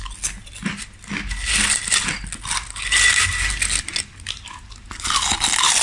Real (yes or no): yes